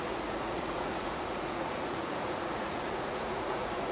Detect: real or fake fake